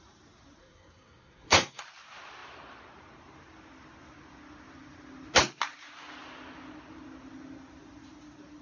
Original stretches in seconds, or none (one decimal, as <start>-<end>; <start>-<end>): 0.0-0.6; 1.8-8.6